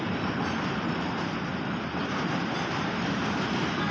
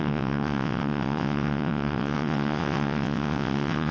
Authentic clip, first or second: first